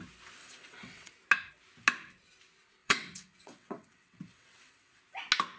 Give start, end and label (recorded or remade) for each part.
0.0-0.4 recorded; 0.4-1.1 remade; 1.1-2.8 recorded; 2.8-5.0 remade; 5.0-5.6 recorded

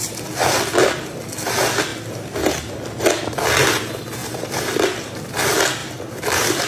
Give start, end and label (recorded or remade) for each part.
0.0-4.2 recorded; 4.2-5.3 remade; 5.3-5.8 recorded; 5.8-6.7 remade

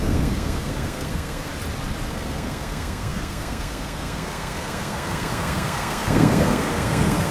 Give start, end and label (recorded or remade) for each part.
0.0-1.5 remade; 1.5-2.1 recorded; 2.1-7.3 remade

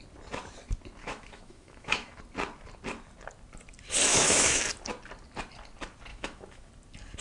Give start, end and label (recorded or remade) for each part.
0.0-1.0 recorded; 1.0-2.2 remade; 2.2-4.1 recorded; 4.1-4.6 remade; 4.6-6.1 recorded; 6.1-6.7 remade; 6.7-7.2 recorded